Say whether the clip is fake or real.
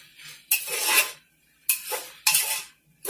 real